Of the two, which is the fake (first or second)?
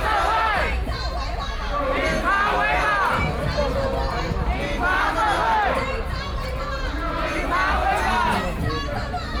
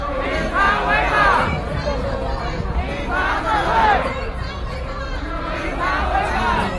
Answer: second